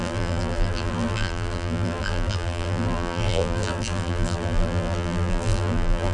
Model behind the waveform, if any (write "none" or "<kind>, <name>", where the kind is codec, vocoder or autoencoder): vocoder, BigVGAN v2